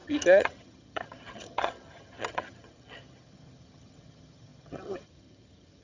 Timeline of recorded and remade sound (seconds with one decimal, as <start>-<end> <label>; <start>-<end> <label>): 0.0-5.8 remade